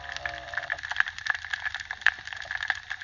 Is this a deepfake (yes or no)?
no